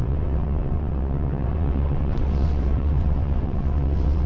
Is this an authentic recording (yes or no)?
no